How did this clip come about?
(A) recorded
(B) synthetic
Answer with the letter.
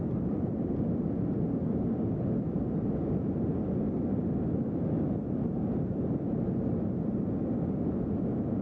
A